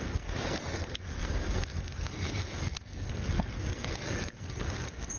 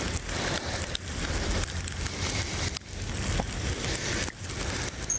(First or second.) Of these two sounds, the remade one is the first